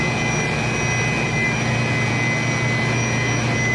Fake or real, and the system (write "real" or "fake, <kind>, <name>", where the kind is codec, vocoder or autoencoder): real